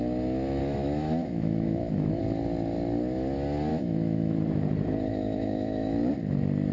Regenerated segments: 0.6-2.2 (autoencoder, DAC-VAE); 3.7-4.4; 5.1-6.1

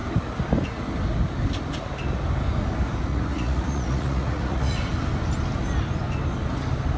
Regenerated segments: 3.1-4.8 (vocoder, Vocos)

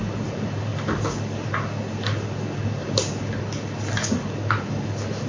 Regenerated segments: none

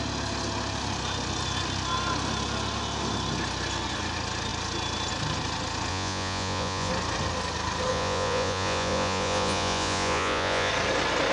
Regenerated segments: 5.9-6.9 (vocoder, Vocos); 7.9-10.7

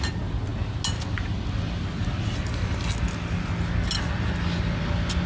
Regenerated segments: none

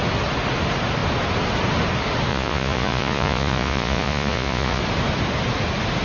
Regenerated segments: 2.3-4.8 (vocoder, Vocos)